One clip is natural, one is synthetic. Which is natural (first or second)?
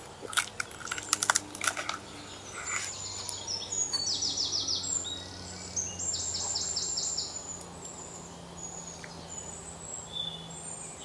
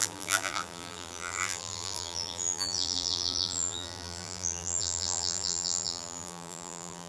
first